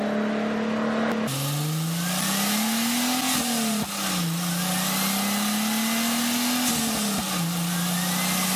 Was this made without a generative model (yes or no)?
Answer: yes